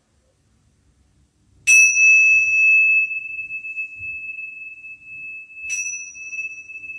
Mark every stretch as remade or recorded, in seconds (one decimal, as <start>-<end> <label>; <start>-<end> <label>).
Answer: 0.0-7.0 recorded